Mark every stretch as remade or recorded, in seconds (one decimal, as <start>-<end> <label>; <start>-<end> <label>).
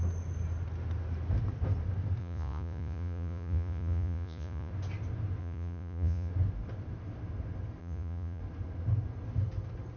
0.0-2.2 recorded; 2.2-4.7 remade; 4.7-5.4 recorded; 5.4-6.3 remade; 6.3-7.8 recorded; 7.8-8.4 remade; 8.4-10.0 recorded